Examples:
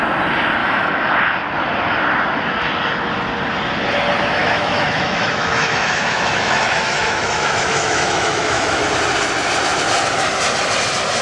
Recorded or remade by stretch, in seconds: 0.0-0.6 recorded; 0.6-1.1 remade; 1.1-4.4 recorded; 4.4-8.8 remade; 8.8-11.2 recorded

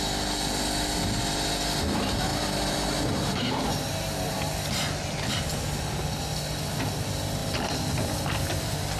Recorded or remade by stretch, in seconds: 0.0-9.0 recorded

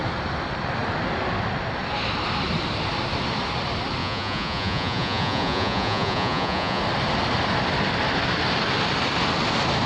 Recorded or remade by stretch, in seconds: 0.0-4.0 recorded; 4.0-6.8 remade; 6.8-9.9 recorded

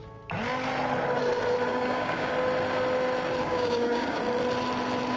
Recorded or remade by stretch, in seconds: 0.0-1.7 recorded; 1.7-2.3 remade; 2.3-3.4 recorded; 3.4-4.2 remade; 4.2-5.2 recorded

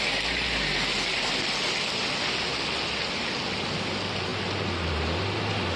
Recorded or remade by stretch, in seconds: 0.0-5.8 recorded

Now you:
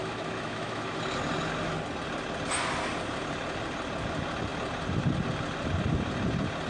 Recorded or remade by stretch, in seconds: 0.0-1.0 remade; 1.0-6.7 recorded